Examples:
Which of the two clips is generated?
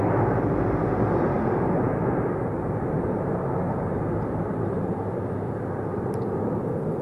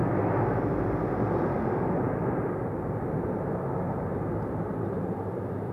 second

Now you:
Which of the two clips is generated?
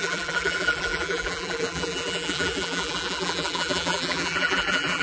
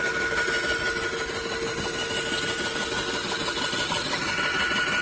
first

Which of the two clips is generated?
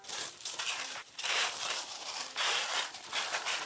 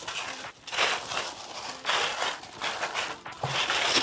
first